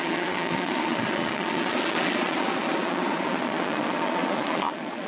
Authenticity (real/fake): fake